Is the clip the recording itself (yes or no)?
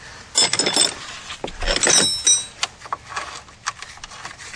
yes